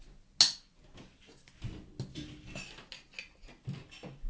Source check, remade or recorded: recorded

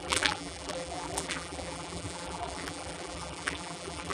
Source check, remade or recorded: remade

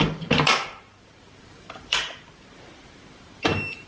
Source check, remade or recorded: remade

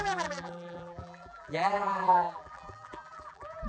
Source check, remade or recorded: remade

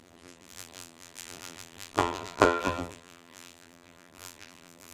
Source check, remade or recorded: remade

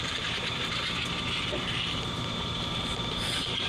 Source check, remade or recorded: remade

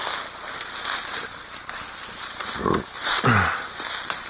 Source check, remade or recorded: recorded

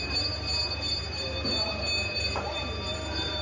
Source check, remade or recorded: remade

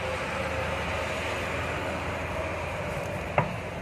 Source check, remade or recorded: recorded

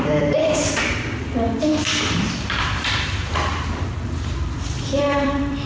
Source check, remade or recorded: remade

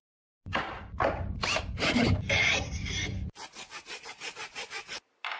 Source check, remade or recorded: recorded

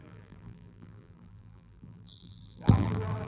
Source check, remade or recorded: remade